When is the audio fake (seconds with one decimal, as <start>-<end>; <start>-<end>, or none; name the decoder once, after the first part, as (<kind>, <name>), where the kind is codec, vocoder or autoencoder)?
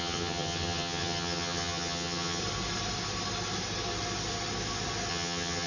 0.0-2.4 (vocoder, HiFi-GAN); 5.1-5.7